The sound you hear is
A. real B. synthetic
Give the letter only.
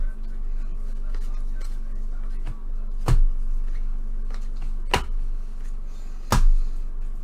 A